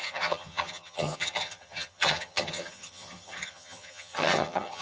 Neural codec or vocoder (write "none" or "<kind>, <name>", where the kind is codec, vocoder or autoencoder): vocoder, HiFi-GAN